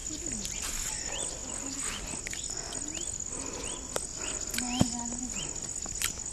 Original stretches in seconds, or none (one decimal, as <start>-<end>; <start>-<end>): 0.0-6.3